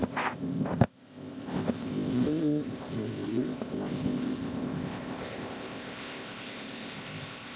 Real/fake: fake